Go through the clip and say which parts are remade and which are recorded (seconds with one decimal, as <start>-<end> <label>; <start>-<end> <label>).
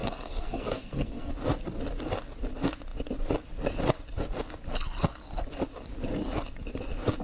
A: 0.0-1.3 remade; 1.3-7.2 recorded